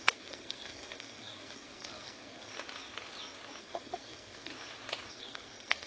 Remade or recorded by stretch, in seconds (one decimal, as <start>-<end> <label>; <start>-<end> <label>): 0.0-2.5 remade; 2.5-3.6 recorded; 3.6-4.5 remade; 4.5-5.1 recorded; 5.1-5.9 remade